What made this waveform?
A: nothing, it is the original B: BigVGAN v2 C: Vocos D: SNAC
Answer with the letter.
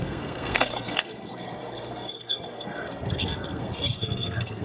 D